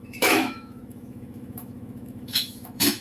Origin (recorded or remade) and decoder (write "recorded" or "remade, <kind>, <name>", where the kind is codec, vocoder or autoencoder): remade, autoencoder, DAC-VAE